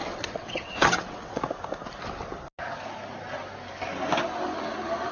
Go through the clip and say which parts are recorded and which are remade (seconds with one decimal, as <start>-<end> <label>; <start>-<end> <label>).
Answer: 0.0-1.4 remade; 1.4-5.1 recorded